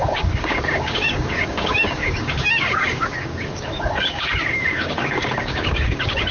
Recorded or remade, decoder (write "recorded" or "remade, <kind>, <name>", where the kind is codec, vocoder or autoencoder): remade, codec, DAC